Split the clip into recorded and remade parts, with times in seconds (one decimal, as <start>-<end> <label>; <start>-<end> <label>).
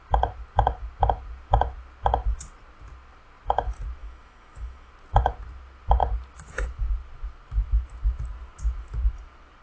0.0-4.0 recorded; 4.0-4.9 remade; 4.9-9.6 recorded